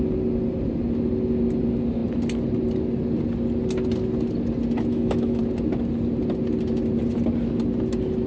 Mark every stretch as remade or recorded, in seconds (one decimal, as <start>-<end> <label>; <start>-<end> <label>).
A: 0.0-4.9 recorded; 4.9-5.4 remade; 5.4-8.3 recorded